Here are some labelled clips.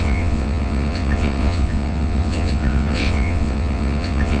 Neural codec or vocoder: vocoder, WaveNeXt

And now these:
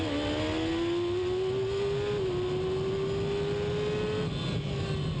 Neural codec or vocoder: none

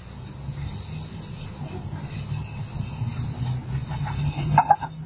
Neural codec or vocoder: none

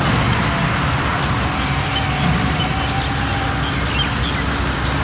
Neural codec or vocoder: none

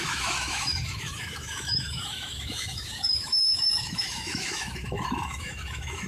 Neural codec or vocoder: autoencoder, DAC-VAE